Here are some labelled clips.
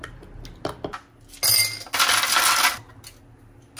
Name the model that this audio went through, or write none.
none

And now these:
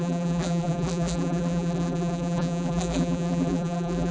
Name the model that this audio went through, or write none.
vocoder, BigVGAN v2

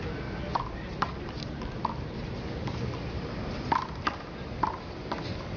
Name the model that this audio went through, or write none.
none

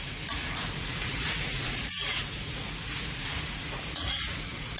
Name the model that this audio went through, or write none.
vocoder, Vocos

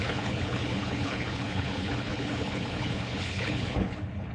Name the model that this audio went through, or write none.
codec, HILCodec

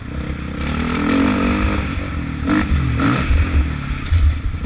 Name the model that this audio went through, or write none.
none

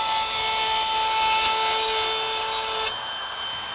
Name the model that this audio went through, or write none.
none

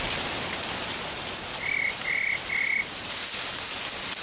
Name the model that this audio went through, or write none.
none